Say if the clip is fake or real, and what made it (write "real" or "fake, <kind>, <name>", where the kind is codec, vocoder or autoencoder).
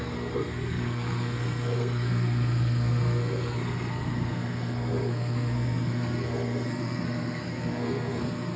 fake, codec, SNAC